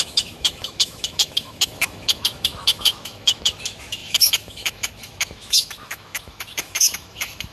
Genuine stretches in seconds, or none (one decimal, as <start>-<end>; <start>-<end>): none